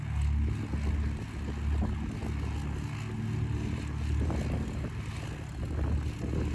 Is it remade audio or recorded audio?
recorded